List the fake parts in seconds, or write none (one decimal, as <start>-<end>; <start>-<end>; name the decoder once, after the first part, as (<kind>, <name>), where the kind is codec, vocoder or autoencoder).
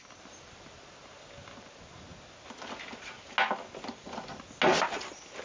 none